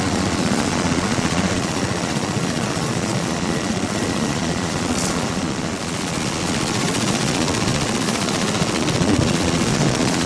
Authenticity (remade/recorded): remade